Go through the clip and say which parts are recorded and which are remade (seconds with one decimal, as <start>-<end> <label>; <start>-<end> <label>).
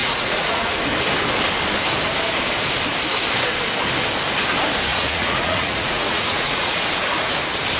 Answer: 0.0-0.7 remade; 0.7-4.9 recorded; 4.9-6.8 remade; 6.8-7.8 recorded